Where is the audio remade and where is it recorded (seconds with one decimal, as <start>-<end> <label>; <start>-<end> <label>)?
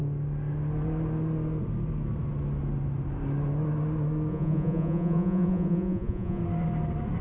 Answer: 0.0-4.3 recorded; 4.3-6.4 remade; 6.4-7.2 recorded